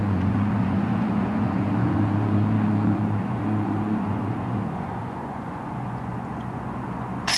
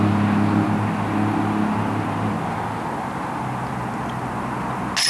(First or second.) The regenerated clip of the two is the first